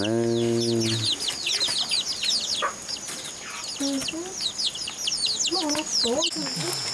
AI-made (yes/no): no